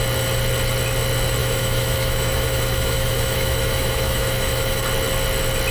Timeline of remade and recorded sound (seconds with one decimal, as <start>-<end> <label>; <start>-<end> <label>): 0.0-1.4 recorded; 1.4-4.8 remade; 4.8-5.7 recorded